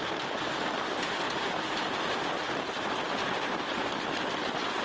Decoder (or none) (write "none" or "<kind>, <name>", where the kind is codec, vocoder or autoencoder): none